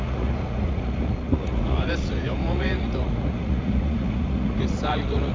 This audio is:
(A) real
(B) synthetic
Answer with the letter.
B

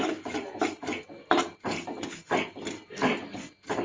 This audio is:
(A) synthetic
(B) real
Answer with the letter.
B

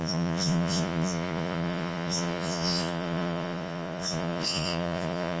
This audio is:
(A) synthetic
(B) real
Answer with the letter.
A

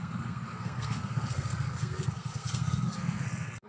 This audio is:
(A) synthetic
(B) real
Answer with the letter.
A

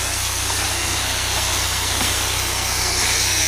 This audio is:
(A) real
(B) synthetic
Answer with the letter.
B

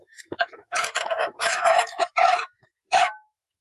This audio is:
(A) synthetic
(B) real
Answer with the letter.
A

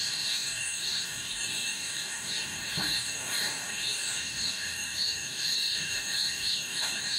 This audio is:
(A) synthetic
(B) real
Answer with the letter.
A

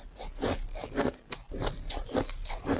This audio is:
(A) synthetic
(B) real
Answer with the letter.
B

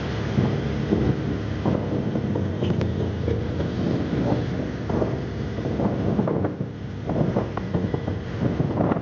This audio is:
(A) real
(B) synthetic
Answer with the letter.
A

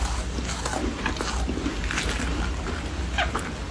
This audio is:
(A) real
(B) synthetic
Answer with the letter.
A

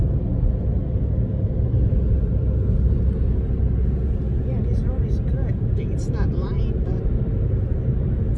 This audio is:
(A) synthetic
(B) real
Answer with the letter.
B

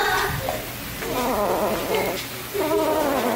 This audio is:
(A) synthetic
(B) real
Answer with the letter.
A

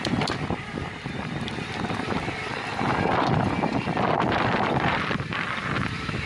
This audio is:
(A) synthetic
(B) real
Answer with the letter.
A